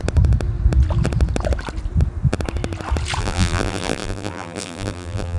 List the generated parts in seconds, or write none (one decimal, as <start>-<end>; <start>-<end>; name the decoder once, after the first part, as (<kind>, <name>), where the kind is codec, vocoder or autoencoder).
3.2-5.4 (vocoder, BigVGAN v2)